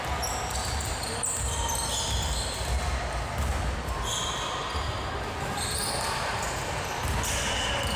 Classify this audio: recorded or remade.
recorded